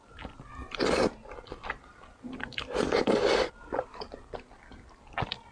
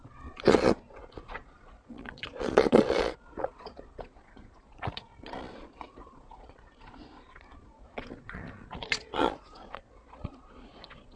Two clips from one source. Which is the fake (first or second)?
second